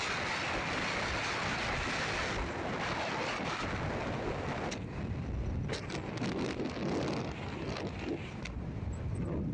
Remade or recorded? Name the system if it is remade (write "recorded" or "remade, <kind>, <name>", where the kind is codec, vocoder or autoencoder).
recorded